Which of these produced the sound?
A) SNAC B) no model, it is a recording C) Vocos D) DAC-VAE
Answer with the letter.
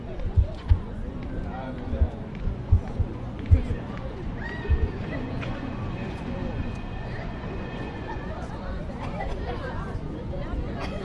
C